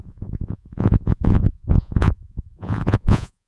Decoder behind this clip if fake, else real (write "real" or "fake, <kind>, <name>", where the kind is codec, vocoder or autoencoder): fake, vocoder, Vocos